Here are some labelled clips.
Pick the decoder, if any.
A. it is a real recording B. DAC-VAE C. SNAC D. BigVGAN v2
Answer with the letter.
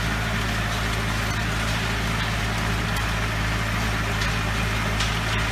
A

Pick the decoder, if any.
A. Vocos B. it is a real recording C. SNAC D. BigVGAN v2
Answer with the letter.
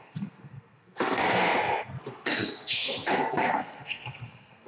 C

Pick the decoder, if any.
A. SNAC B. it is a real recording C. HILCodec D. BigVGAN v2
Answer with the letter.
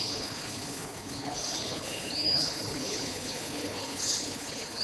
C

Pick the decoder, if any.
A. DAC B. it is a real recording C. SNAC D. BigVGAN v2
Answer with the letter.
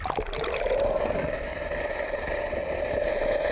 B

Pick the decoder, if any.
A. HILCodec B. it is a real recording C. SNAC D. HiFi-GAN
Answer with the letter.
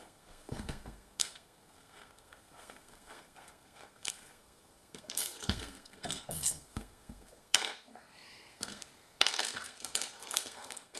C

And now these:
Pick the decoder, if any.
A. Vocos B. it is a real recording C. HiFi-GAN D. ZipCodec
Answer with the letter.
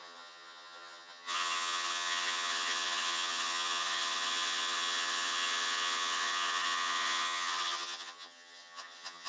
C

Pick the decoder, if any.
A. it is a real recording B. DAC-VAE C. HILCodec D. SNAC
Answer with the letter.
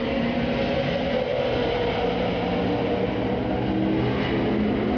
A